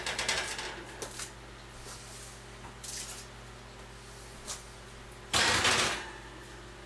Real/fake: real